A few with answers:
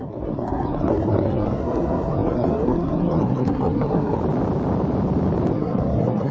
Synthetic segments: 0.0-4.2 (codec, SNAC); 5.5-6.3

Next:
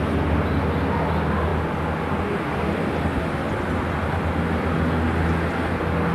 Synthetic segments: none

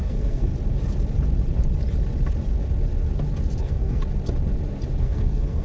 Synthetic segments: 0.0-0.5 (codec, SNAC); 3.6-4.0; 5.0-5.6

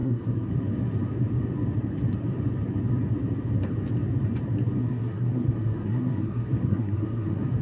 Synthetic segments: 0.0-0.5 (codec, SNAC); 4.8-7.6

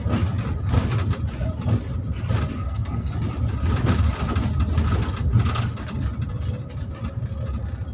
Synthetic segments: 2.6-3.1 (codec, SNAC)

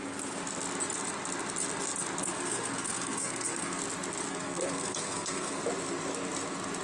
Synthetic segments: 2.2-3.8 (codec, SNAC); 4.3-5.6

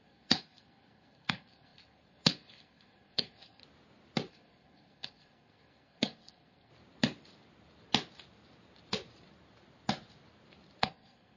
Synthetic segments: 0.0-3.6 (codec, SNAC); 4.3-6.7; 10.8-11.4

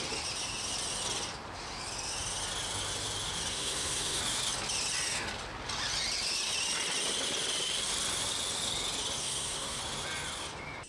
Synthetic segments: 3.5-4.2 (codec, SNAC); 9.2-9.8